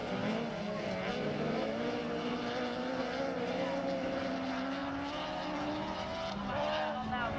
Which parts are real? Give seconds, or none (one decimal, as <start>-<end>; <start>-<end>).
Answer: 0.0-7.4